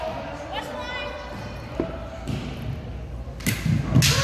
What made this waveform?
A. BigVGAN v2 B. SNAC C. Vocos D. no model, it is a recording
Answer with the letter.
D